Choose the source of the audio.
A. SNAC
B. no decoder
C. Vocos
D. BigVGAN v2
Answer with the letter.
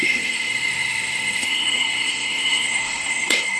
A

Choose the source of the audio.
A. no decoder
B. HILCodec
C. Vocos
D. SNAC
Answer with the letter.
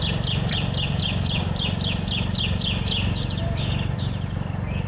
A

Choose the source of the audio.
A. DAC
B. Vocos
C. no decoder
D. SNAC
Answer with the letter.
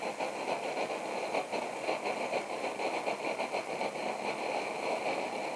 C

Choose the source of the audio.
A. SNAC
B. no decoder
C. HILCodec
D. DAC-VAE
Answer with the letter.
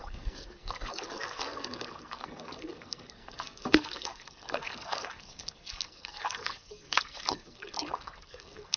A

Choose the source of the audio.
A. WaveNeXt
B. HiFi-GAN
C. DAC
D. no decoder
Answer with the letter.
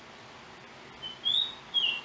D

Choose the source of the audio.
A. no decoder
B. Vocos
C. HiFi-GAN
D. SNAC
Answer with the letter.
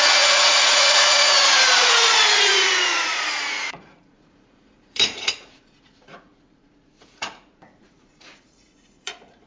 B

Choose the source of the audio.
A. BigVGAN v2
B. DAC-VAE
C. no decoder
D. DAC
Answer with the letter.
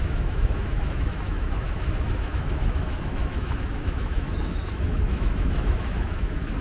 B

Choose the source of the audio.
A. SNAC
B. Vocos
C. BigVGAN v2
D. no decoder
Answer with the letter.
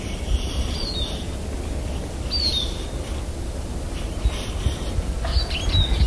D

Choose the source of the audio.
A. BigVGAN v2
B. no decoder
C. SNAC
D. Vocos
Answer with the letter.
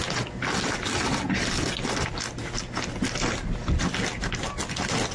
B